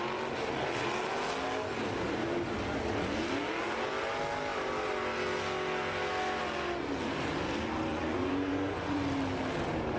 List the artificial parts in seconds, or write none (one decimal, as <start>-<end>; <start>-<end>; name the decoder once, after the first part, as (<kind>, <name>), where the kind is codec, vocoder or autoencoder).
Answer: 7.9-9.0 (vocoder, Vocos)